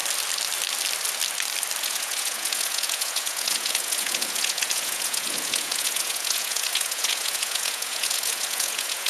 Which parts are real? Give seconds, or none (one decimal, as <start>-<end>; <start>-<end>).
0.0-1.8